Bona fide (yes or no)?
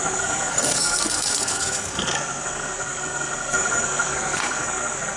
no